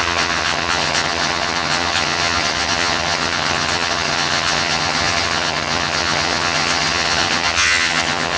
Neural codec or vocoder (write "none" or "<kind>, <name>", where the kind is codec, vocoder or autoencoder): vocoder, HiFi-GAN